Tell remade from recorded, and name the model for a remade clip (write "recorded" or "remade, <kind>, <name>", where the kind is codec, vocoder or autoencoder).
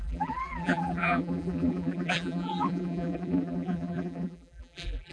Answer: remade, vocoder, BigVGAN v2